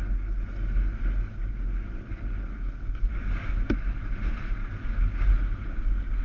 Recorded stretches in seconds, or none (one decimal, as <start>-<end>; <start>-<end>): 0.0-3.1; 3.7-4.6; 5.3-6.2